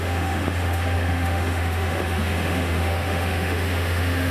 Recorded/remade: remade